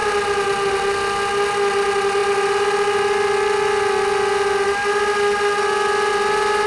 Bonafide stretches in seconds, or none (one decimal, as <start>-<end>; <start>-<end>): 0.0-6.7